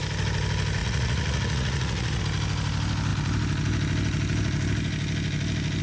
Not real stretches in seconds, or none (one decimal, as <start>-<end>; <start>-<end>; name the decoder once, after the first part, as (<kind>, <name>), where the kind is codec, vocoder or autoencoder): 0.8-2.2 (vocoder, Vocos)